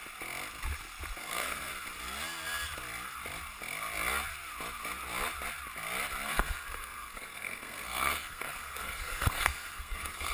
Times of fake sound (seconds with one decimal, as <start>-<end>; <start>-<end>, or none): 1.2-1.7; 6.3-10.3